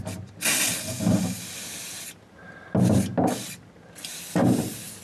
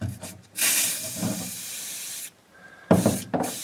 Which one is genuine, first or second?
first